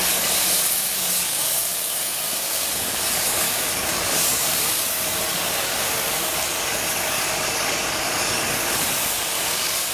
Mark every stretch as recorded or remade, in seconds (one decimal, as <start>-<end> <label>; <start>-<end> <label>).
0.0-9.9 remade